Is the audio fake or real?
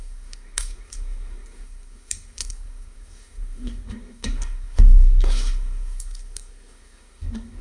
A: fake